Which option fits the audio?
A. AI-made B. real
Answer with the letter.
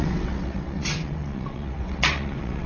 A